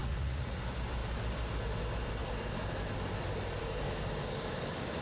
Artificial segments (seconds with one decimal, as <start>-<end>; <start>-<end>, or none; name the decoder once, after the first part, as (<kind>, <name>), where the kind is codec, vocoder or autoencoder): 0.0-0.6 (vocoder, Vocos)